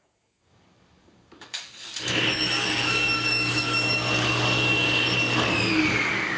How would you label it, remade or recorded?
remade